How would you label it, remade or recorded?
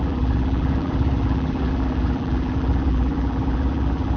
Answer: remade